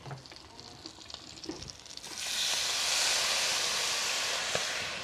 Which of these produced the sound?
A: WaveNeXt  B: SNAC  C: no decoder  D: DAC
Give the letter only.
C